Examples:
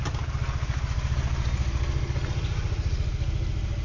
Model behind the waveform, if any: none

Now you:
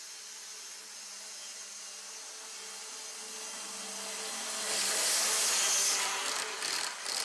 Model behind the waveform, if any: none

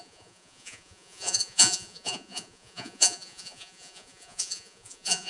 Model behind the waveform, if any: vocoder, Vocos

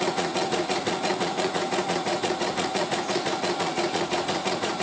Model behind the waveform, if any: vocoder, Vocos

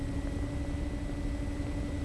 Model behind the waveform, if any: none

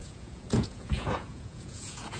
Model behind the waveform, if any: vocoder, Vocos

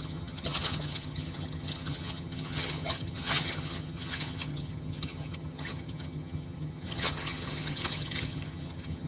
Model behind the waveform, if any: vocoder, HiFi-GAN